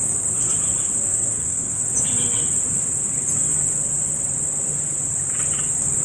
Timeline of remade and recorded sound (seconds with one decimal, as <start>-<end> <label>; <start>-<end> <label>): 0.0-1.1 recorded; 1.1-1.8 remade; 1.8-6.0 recorded